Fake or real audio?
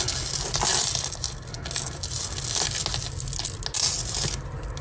real